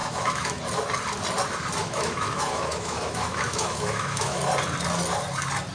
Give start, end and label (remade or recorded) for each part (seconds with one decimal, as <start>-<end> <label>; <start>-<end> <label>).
0.0-0.6 remade; 0.6-1.8 recorded; 1.8-4.4 remade; 4.4-5.7 recorded